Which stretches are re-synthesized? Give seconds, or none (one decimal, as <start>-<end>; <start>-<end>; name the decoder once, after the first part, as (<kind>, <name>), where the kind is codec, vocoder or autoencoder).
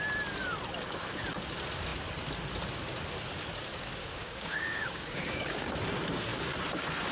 3.7-5.7 (codec, DAC)